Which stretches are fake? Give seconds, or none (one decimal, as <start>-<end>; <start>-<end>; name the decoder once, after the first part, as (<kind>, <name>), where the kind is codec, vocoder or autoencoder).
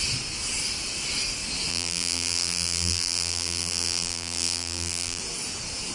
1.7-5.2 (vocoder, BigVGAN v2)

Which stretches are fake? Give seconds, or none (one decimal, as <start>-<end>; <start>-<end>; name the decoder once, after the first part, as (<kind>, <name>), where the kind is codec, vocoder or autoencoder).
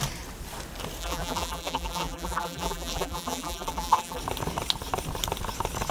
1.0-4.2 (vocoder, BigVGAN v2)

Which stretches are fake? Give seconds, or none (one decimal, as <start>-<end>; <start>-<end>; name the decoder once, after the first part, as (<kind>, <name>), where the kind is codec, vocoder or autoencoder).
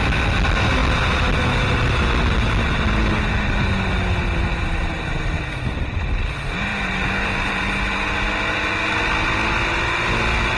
6.7-8.9 (vocoder, BigVGAN v2)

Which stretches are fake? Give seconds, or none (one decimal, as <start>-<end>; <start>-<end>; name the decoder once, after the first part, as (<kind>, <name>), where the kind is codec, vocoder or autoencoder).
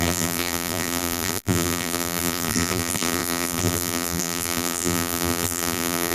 0.0-6.1 (vocoder, BigVGAN v2)